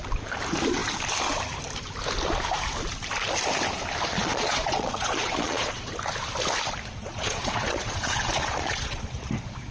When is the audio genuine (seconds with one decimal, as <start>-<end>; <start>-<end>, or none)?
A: 0.0-4.1; 5.9-7.0; 9.1-9.7